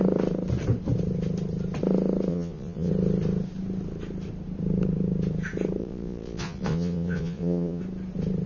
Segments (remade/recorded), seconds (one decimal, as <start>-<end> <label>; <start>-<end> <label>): 0.0-2.3 recorded; 2.3-2.9 remade; 2.9-5.8 recorded; 5.8-7.8 remade; 7.8-8.5 recorded